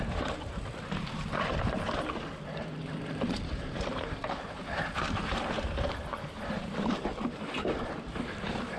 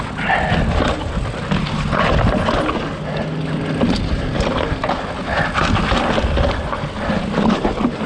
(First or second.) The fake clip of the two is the first